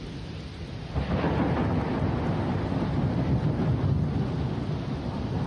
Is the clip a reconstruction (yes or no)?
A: no